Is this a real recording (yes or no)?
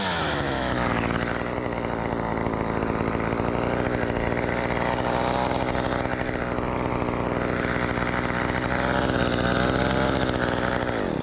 yes